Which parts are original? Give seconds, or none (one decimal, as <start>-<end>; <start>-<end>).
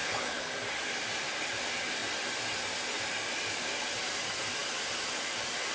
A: 0.5-5.7